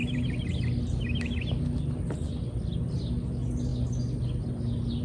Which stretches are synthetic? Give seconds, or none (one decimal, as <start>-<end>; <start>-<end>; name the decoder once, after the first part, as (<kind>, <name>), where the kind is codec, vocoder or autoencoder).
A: none